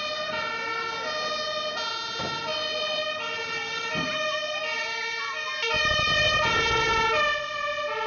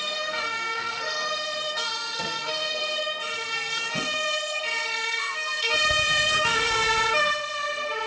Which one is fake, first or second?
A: second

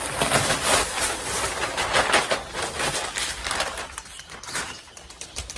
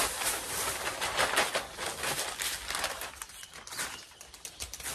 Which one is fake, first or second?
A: second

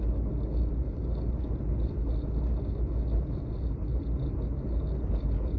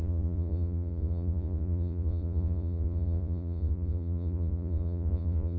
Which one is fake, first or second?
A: second